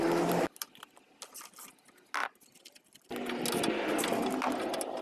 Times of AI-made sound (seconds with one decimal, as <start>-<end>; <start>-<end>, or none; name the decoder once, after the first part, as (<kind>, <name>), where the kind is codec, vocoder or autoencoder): none